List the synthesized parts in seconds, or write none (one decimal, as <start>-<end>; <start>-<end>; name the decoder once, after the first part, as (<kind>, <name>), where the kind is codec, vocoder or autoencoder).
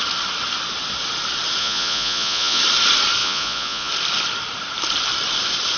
1.6-2.6 (vocoder, Vocos); 3.2-3.9